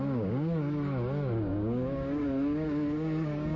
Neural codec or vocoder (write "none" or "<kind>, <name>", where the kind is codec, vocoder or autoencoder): codec, DAC